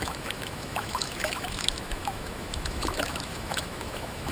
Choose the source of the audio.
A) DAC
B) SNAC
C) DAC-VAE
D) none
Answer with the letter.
C